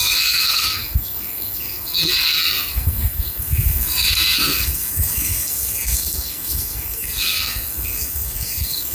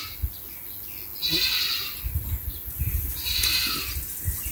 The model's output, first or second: first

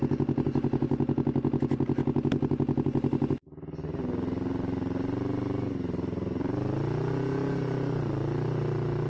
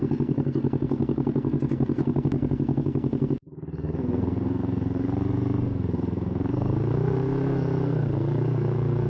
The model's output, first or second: second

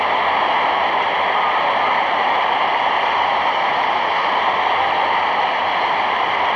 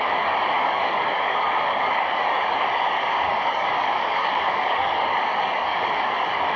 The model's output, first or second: second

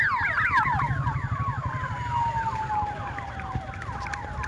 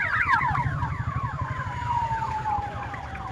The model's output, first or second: second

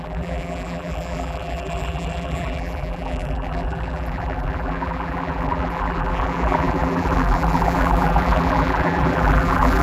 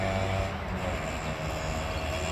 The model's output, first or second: first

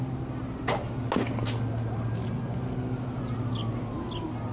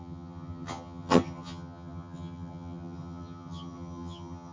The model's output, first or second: second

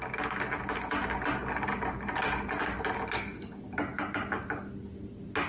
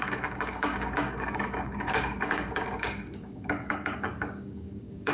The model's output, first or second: second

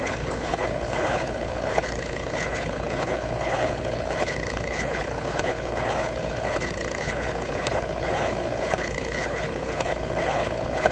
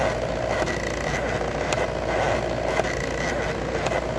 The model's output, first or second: first